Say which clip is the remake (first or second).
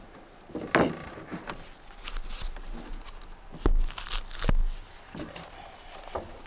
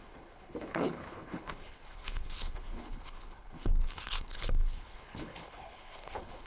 second